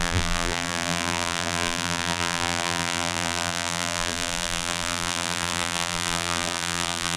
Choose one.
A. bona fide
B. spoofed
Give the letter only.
B